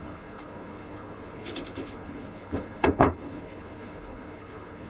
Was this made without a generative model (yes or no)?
no